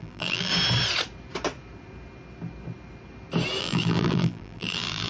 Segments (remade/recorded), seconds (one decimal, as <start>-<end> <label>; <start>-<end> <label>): 0.0-0.5 remade; 0.5-3.6 recorded; 3.6-5.1 remade